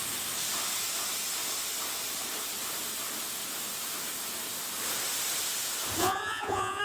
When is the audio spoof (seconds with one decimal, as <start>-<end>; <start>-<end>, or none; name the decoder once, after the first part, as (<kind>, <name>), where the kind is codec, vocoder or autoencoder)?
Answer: 6.0-6.8 (vocoder, Vocos)